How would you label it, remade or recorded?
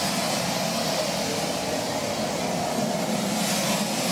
recorded